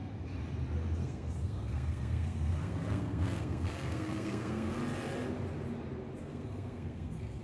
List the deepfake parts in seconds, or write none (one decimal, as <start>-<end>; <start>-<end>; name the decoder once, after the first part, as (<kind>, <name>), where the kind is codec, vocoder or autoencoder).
1.0-4.7 (codec, SNAC); 6.2-7.4